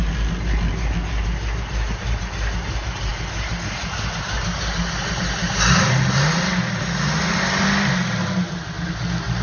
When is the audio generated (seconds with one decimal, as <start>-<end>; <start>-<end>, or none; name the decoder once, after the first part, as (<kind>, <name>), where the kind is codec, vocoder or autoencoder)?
none